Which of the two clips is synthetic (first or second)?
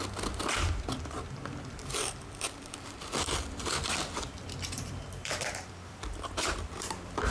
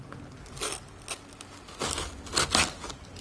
first